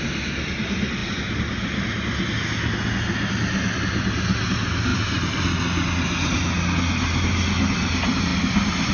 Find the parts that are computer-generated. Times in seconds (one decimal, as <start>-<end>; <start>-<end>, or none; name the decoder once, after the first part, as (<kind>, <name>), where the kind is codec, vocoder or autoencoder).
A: 4.9-5.6 (vocoder, BigVGAN v2)